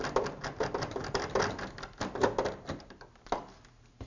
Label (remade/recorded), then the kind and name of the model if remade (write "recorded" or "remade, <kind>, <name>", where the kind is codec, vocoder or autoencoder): recorded